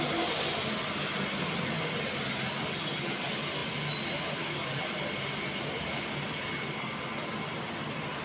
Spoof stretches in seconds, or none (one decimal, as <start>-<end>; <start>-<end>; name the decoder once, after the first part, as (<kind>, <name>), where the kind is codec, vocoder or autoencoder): none